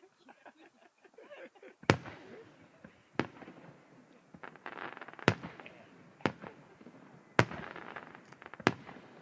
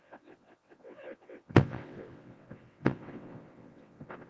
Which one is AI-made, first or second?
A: second